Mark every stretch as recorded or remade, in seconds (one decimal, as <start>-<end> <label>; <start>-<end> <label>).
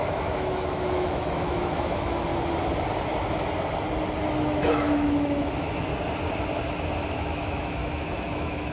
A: 0.0-2.3 remade; 2.3-4.3 recorded; 4.3-5.9 remade; 5.9-7.1 recorded; 7.1-8.7 remade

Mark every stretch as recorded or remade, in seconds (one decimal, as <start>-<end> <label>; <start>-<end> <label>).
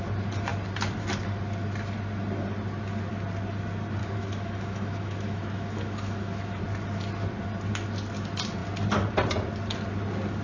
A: 0.0-4.0 recorded; 4.0-6.6 remade; 6.6-10.4 recorded